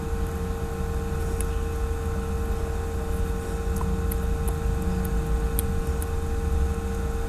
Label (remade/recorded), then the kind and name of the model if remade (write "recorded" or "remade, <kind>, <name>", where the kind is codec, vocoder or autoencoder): recorded